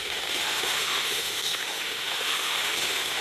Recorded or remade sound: remade